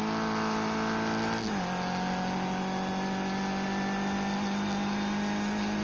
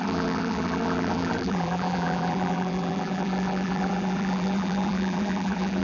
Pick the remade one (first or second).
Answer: second